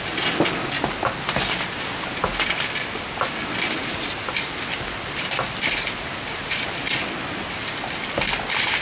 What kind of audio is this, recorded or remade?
recorded